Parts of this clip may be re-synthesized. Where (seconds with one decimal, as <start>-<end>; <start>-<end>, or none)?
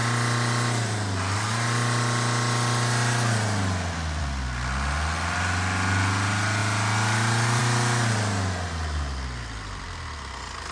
none